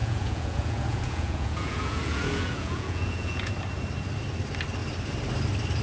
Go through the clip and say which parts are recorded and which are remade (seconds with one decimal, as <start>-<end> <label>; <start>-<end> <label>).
0.0-3.5 remade; 3.5-5.8 recorded